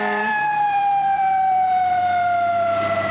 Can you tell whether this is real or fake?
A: fake